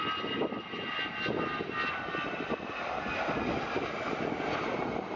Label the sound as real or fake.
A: real